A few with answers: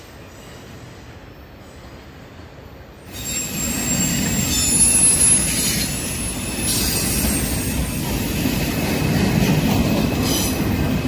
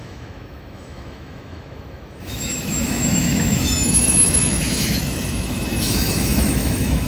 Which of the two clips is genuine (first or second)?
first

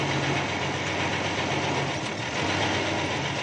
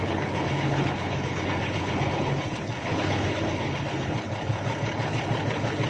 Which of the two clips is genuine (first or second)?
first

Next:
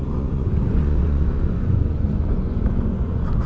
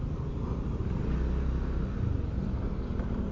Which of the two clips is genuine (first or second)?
second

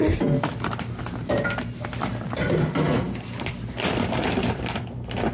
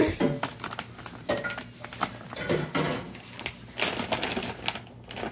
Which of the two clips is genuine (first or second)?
second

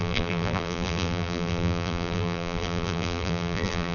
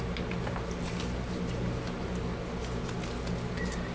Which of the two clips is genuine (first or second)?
second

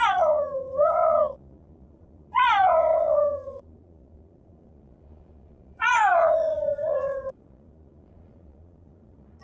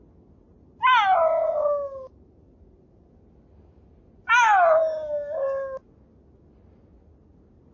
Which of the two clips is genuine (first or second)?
second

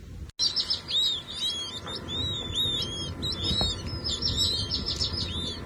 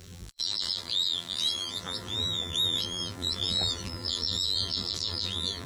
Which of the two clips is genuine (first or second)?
first